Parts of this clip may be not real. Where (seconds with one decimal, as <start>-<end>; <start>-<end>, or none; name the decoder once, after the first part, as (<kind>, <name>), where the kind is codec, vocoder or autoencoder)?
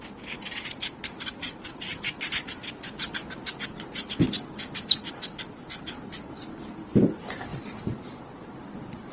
0.7-3.1 (vocoder, BigVGAN v2); 7.5-8.2